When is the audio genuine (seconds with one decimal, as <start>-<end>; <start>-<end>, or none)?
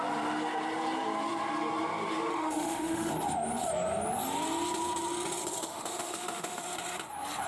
0.0-2.3; 3.1-5.6; 6.6-7.5